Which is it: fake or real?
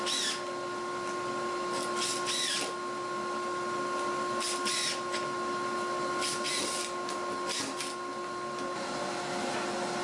real